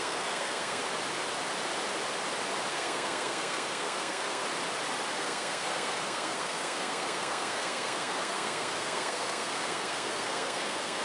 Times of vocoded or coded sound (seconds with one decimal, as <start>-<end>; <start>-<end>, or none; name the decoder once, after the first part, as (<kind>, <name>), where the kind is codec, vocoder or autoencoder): 0.0-0.8 (codec, SNAC); 2.7-4.4; 5.1-11.0